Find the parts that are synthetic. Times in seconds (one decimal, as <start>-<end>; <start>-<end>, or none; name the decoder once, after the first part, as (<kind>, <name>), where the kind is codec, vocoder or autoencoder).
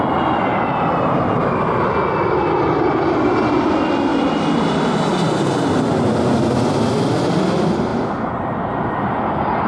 0.5-1.6 (vocoder, BigVGAN v2); 7.9-8.8